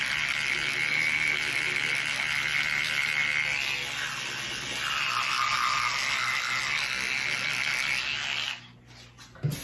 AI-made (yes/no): no